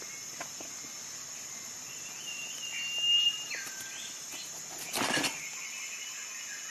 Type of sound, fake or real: real